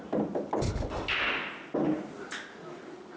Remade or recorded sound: recorded